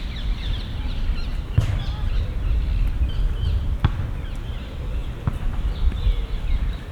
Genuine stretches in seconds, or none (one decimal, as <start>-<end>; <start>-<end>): 5.0-6.5